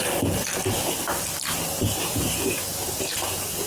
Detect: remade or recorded recorded